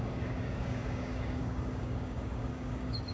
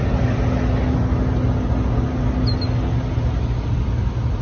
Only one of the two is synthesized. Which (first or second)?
first